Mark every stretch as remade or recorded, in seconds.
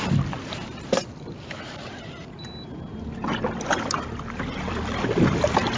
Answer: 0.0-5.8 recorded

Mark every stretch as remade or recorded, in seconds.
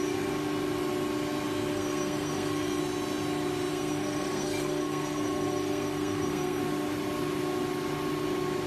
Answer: 0.0-1.7 recorded; 1.7-2.8 remade; 2.8-3.7 recorded; 3.7-6.6 remade; 6.6-8.7 recorded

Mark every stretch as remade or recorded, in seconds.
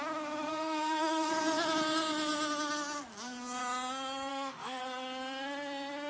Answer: 0.0-0.5 recorded; 0.5-1.3 remade; 1.3-4.3 recorded; 4.3-4.8 remade; 4.8-6.1 recorded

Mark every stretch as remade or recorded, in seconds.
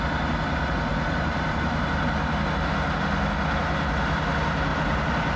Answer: 0.0-0.9 recorded; 0.9-1.6 remade; 1.6-4.7 recorded; 4.7-5.4 remade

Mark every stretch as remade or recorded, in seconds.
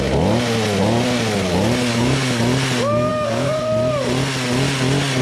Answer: 0.0-1.9 recorded; 1.9-2.4 remade; 2.4-3.1 recorded; 3.1-3.6 remade; 3.6-5.2 recorded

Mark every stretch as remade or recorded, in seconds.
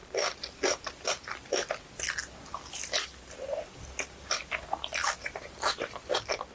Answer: 0.0-1.7 remade; 1.7-2.5 recorded; 2.5-4.5 remade; 4.5-5.0 recorded; 5.0-6.5 remade